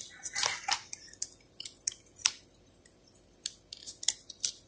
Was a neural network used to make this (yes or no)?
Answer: no